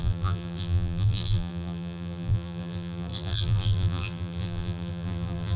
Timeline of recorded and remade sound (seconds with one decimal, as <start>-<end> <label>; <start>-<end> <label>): 0.0-5.6 remade

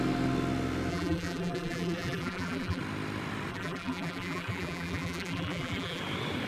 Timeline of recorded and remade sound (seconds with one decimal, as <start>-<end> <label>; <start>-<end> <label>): 0.0-0.9 recorded; 0.9-2.8 remade; 2.8-3.5 recorded; 3.5-6.0 remade; 6.0-6.5 recorded

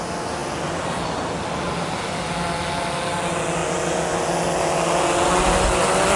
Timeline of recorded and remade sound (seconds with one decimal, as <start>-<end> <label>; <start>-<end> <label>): 0.0-6.2 recorded

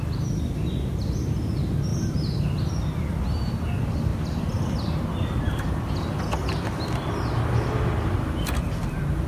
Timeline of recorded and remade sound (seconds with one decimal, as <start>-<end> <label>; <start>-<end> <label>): 0.0-1.9 recorded; 1.9-2.7 remade; 2.7-9.3 recorded

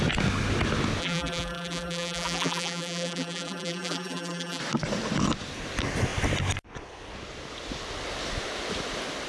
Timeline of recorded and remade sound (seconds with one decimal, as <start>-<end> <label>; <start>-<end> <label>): 0.0-1.0 recorded; 1.0-4.6 remade; 4.6-9.3 recorded